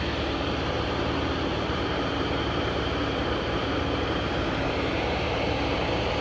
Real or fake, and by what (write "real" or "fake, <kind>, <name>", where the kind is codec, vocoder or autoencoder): fake, vocoder, BigVGAN v2